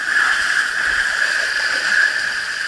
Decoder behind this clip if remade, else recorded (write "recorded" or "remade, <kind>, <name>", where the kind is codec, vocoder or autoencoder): recorded